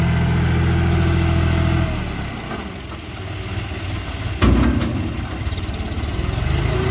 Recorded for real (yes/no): yes